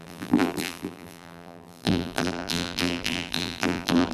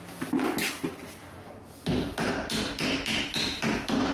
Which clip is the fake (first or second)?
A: first